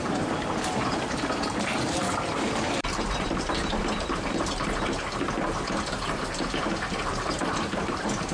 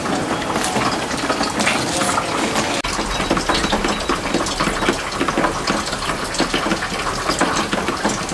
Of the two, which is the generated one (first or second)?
first